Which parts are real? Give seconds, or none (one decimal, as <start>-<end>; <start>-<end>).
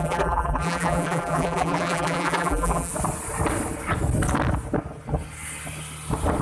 2.9-6.4